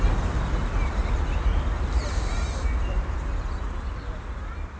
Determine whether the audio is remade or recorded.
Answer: recorded